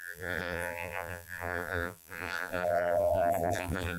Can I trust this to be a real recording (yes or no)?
no